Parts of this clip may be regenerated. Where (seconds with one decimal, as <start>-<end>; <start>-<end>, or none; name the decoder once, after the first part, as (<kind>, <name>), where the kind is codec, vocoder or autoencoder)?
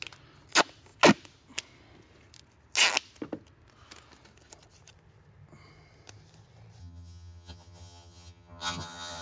6.8-9.2 (vocoder, HiFi-GAN)